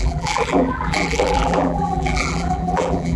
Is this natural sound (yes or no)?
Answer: no